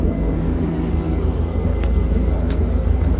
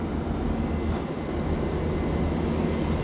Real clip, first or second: second